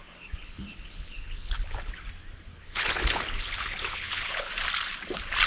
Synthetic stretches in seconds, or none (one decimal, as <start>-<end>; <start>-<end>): 0.0-1.9; 2.5-4.5